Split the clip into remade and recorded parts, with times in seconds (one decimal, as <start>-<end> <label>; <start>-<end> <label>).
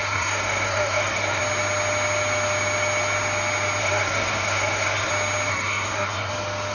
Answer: 0.0-1.4 remade; 1.4-3.8 recorded; 3.8-5.1 remade; 5.1-5.5 recorded; 5.5-6.3 remade; 6.3-6.7 recorded